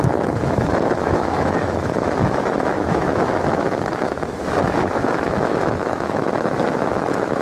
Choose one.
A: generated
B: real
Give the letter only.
A